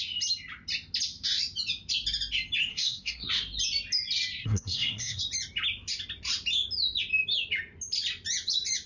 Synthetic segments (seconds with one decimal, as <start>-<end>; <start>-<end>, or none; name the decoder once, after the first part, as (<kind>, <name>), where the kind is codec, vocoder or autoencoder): 2.7-3.3 (codec, SNAC); 4.4-5.2